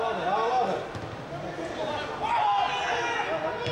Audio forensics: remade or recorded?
recorded